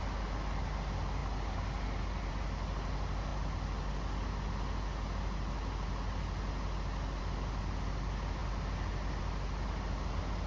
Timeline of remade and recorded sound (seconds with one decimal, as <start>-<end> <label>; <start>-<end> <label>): 0.0-10.5 recorded